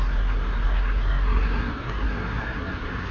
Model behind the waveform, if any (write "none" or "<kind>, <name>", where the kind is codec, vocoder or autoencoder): codec, SNAC